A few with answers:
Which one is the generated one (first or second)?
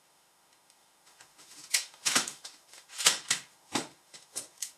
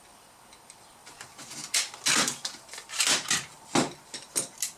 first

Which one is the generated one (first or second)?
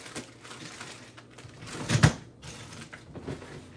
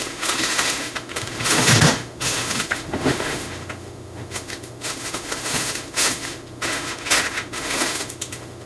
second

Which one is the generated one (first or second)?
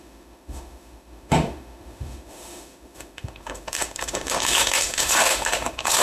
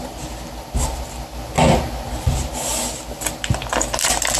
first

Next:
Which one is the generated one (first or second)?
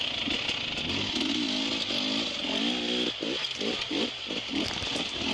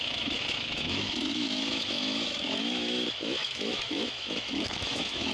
second